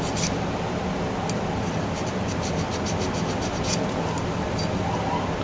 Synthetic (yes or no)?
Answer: no